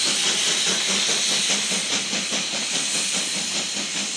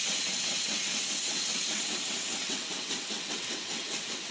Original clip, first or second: first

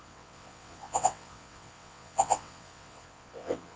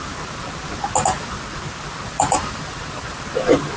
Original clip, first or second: second